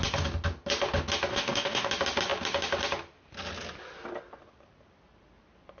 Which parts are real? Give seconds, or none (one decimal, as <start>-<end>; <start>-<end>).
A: 0.0-1.3; 1.9-5.8